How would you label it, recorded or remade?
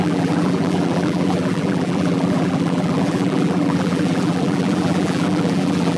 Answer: remade